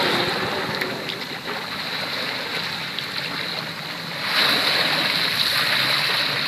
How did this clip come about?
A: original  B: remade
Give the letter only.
A